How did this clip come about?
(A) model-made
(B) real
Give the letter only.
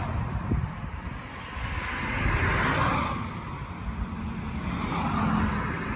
B